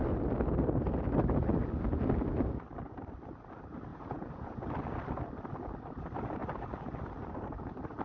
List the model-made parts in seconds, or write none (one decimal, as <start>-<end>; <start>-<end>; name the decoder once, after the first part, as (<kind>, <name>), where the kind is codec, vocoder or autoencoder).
3.9-4.7 (vocoder, Vocos)